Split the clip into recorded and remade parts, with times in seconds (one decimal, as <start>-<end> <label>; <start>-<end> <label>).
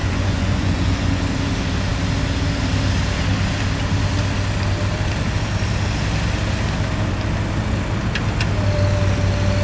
0.0-1.2 remade; 1.2-9.6 recorded